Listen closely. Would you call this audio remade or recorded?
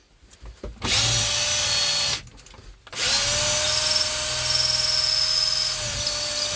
recorded